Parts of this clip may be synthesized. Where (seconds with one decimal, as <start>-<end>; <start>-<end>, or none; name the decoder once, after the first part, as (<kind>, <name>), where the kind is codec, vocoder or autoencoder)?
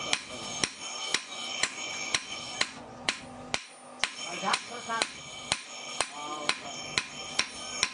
1.1-3.2 (vocoder, Vocos); 4.3-4.9